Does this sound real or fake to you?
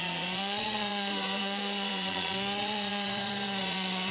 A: fake